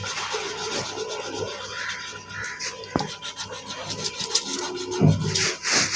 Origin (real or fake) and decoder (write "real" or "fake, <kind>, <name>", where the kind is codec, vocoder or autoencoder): real